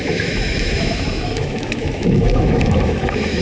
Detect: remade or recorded remade